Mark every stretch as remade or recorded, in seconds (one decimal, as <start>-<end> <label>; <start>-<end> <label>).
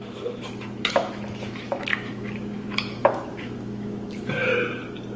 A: 0.0-4.5 remade; 4.5-5.2 recorded